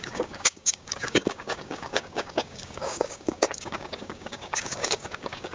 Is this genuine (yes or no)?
no